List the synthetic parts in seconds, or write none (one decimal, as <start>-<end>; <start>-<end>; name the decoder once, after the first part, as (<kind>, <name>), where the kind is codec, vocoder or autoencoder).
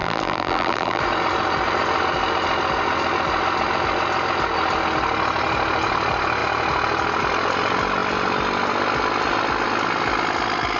0.0-1.0 (vocoder, BigVGAN v2)